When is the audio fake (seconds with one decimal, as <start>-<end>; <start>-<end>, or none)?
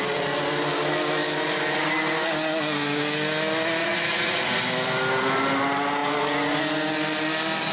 3.8-4.6